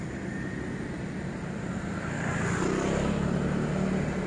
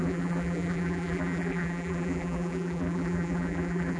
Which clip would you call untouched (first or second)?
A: first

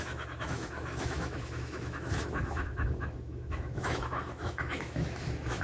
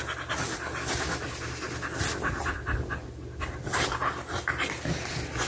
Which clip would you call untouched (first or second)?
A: second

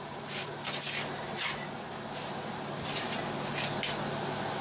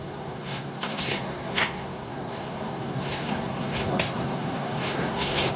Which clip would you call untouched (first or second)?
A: first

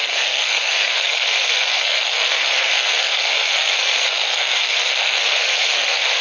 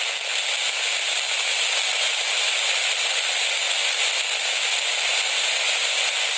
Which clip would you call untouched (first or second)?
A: second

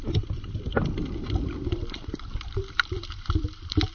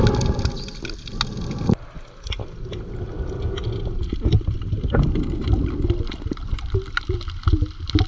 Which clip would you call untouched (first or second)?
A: second